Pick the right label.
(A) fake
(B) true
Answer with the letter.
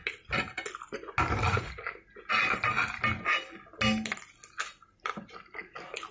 B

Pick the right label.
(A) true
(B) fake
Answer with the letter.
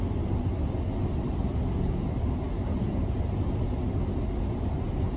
A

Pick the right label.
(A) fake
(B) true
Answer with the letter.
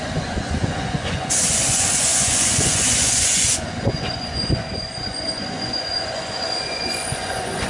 A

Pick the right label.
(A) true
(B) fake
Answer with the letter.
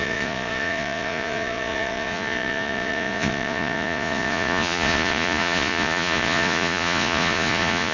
B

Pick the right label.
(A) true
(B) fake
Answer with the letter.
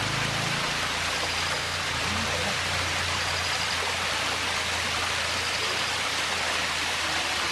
A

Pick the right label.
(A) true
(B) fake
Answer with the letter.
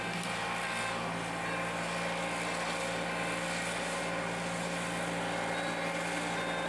A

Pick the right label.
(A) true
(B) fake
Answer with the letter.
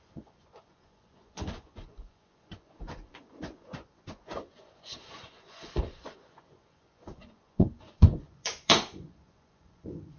B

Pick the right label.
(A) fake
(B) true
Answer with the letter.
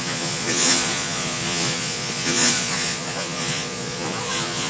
A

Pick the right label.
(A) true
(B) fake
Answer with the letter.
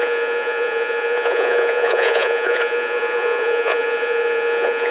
B